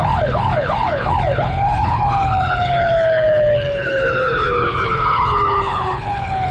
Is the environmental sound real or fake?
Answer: fake